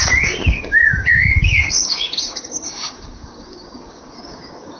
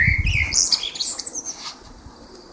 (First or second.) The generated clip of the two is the first